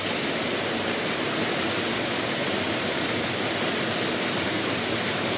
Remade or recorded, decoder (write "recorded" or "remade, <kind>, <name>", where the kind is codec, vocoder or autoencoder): recorded